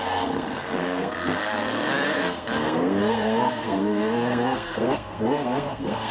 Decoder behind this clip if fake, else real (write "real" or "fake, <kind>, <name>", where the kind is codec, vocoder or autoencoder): fake, codec, SNAC